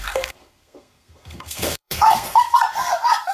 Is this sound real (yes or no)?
no